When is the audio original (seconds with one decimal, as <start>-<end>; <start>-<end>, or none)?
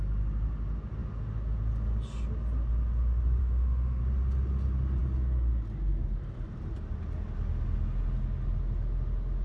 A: 0.0-3.4; 4.0-9.4